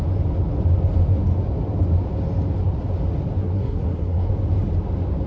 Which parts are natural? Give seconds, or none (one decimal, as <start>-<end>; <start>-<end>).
0.0-3.4; 4.3-5.3